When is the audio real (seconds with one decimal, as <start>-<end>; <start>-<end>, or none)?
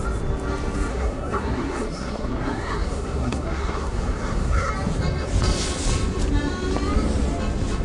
0.0-0.9; 4.7-7.8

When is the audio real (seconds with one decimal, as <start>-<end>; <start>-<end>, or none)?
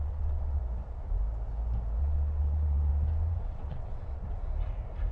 0.6-2.0; 2.9-3.4; 4.2-5.1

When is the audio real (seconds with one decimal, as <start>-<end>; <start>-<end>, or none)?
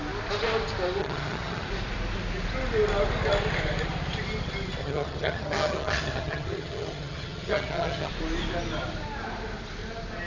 0.0-1.0; 1.7-4.8; 8.1-10.3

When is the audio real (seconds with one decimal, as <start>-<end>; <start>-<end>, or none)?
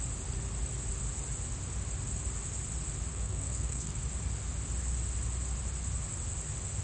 0.0-3.1; 4.0-6.8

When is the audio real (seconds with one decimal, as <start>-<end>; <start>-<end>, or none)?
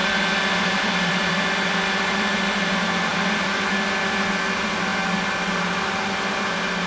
2.7-3.1; 3.7-6.9